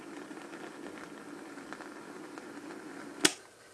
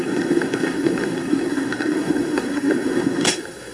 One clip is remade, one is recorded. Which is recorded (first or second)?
first